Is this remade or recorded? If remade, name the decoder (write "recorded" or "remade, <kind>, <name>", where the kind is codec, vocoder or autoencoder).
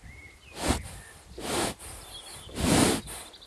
recorded